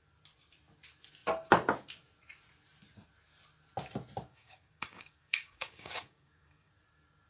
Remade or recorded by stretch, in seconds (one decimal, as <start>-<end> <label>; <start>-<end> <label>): 0.0-4.3 recorded; 4.3-6.7 remade; 6.7-7.3 recorded